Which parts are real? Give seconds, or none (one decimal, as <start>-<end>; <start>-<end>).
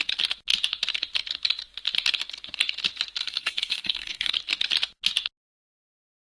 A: 0.0-3.2; 4.3-6.3